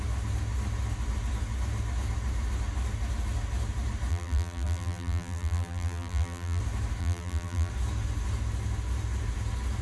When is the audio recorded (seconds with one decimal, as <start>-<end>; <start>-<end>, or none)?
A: 0.0-4.1; 6.6-7.0; 7.7-9.8

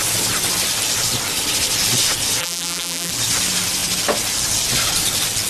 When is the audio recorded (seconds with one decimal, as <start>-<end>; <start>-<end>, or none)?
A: 0.0-2.4; 3.1-5.5

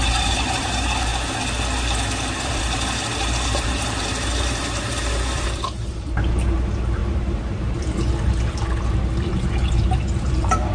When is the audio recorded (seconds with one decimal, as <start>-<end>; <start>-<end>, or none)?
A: 1.1-2.4

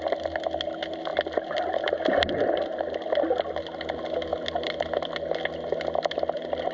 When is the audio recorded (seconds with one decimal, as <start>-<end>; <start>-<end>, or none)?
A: 0.0-6.7

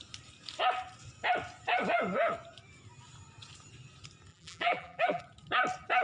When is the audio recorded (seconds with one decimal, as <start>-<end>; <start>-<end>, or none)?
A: 0.0-4.3; 5.2-6.0